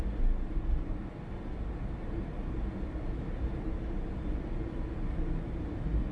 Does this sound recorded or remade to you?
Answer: recorded